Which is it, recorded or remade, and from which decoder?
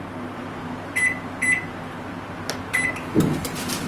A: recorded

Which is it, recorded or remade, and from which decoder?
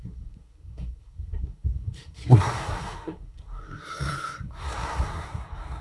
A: remade, codec, SNAC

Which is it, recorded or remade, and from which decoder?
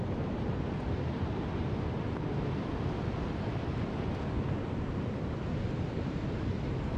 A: recorded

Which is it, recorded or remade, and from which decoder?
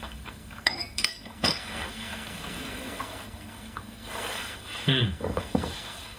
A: remade, codec, SNAC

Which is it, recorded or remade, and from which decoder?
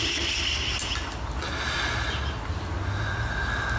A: recorded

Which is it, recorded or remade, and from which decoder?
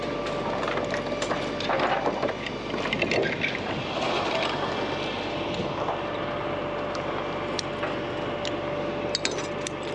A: recorded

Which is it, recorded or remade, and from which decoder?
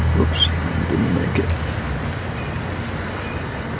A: recorded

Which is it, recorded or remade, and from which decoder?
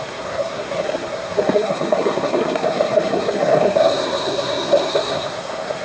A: remade, codec, SNAC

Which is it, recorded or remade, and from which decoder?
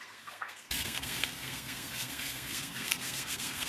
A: remade, codec, SNAC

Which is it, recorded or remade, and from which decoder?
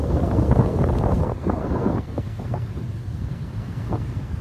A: remade, codec, SNAC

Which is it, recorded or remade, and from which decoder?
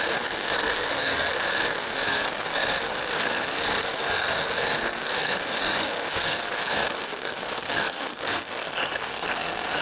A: remade, codec, SNAC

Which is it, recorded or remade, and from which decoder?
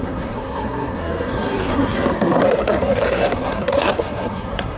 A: remade, codec, SNAC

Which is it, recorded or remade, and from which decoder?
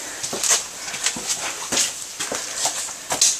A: recorded